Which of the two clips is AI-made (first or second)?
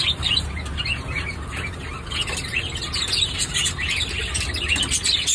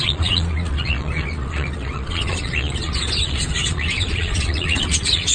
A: second